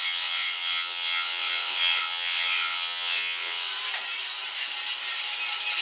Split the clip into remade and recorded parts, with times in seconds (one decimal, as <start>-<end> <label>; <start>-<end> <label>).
0.0-3.7 remade; 3.7-5.8 recorded